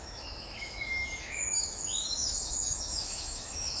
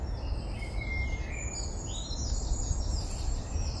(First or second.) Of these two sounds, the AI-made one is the first